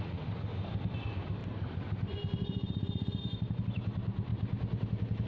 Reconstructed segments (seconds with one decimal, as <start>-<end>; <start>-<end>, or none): 1.4-3.2; 4.3-5.3